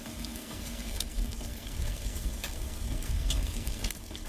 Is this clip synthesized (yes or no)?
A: yes